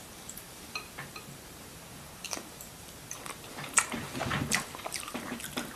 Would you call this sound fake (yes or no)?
yes